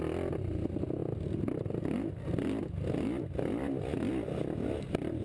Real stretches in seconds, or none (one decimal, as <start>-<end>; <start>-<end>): 0.0-5.2